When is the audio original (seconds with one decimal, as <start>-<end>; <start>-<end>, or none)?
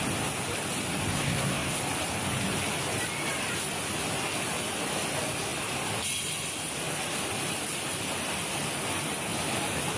0.0-1.1; 1.8-10.0